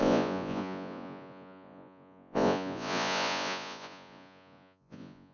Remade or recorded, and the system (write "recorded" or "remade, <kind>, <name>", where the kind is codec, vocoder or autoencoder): remade, vocoder, Vocos